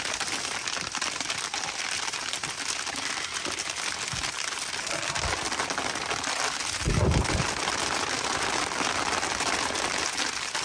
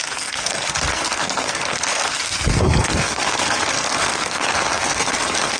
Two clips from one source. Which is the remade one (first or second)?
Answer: second